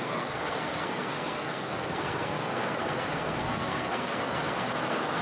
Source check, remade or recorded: remade